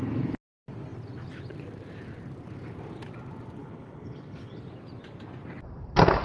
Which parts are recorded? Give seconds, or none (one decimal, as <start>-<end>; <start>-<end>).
0.0-3.6; 4.6-6.2